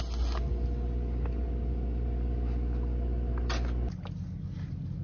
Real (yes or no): yes